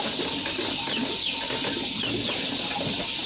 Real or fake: real